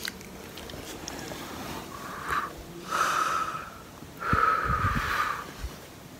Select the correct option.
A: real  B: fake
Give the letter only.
B